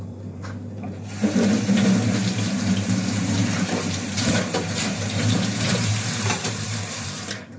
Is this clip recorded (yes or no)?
no